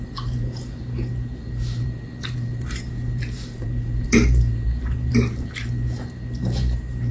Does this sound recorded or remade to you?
remade